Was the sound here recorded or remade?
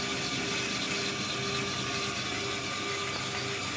recorded